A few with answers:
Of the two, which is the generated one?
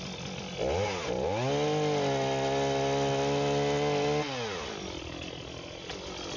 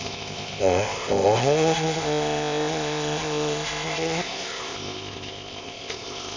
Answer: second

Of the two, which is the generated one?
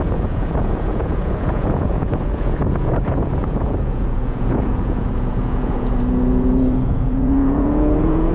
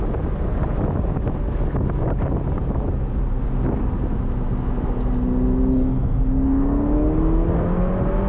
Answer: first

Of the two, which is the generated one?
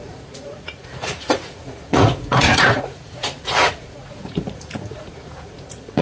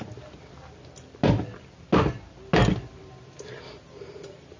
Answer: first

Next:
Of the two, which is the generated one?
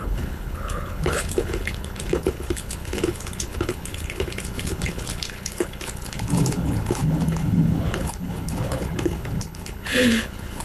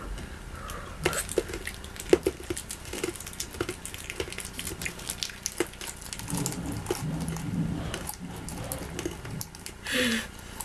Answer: first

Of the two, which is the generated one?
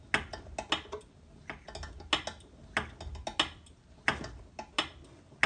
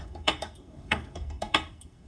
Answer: second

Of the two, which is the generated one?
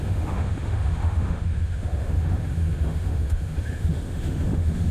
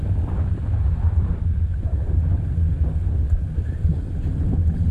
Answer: first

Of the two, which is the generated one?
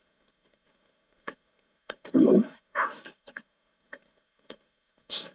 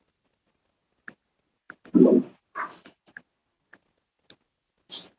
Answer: first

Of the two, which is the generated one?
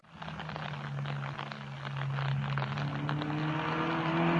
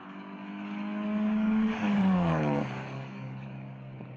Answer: second